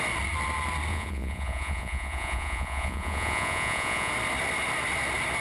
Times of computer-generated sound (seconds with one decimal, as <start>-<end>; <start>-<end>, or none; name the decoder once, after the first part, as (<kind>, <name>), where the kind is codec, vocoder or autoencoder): 0.9-4.1 (vocoder, Vocos)

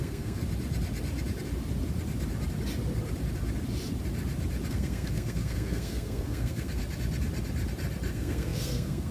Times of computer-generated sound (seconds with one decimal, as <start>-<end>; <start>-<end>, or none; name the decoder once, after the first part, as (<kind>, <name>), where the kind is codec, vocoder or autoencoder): 0.0-0.4 (codec, SNAC); 4.7-6.8; 8.1-9.1

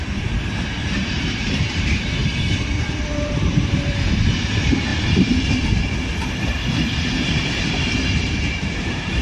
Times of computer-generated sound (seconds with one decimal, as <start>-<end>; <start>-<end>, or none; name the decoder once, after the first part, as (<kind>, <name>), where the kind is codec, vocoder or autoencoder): 0.0-2.2 (vocoder, BigVGAN v2); 2.7-4.9; 5.6-9.2

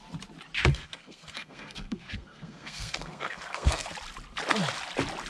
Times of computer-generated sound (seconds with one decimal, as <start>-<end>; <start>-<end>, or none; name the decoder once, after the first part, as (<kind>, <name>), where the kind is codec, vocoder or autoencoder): 0.7-3.9 (codec, SNAC)

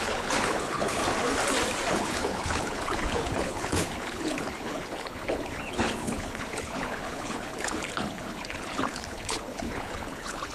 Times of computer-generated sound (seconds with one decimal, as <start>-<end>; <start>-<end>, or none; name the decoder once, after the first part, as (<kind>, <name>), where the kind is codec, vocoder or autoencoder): 0.0-1.0 (codec, HILCodec); 1.9-10.5